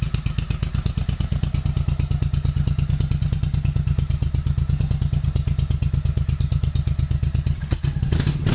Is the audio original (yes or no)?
yes